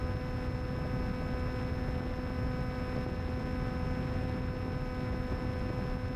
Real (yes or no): yes